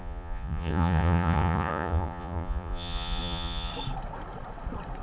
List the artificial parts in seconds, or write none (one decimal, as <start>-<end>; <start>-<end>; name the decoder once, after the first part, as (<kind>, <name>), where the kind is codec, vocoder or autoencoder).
0.0-3.7 (vocoder, Vocos)